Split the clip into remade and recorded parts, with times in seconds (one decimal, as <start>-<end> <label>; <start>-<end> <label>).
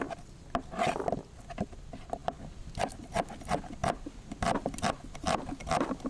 0.0-6.1 recorded